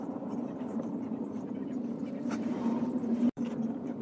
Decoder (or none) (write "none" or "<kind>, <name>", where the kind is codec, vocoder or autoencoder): vocoder, BigVGAN v2